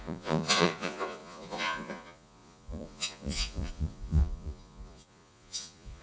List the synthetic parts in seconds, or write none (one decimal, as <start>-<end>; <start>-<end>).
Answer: 0.0-6.0